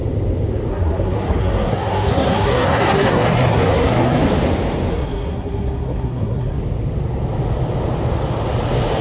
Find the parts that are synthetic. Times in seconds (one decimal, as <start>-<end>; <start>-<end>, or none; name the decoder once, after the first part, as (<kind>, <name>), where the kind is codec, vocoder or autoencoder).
0.7-4.2 (codec, SNAC); 4.9-6.6